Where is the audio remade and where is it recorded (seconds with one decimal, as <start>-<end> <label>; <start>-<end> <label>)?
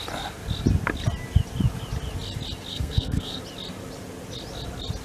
0.0-2.7 recorded; 2.7-3.4 remade; 3.4-5.0 recorded